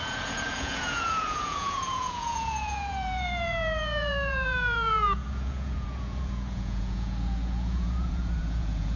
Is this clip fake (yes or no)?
yes